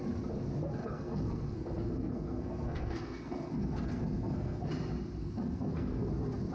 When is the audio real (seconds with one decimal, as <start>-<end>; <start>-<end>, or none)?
0.0-0.8; 4.7-5.2; 6.1-6.5